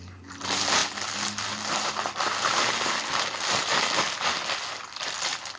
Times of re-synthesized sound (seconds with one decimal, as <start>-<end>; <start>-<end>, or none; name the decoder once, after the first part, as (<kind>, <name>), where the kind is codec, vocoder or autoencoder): none